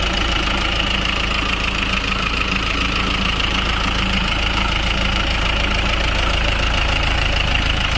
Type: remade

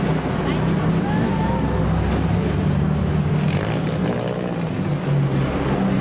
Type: recorded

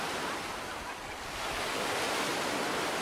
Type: recorded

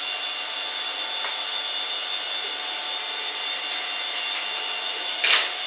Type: recorded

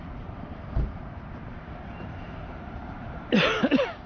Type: remade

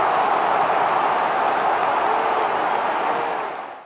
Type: recorded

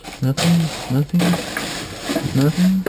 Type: recorded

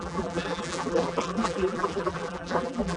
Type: remade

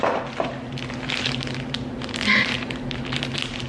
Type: recorded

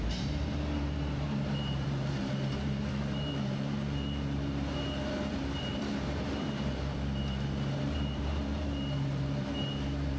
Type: remade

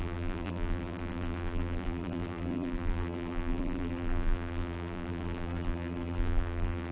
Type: remade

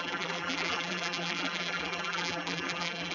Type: remade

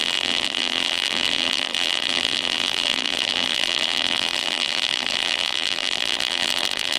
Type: remade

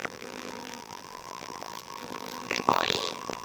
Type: remade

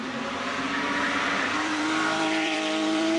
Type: remade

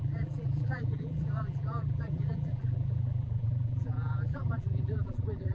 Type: remade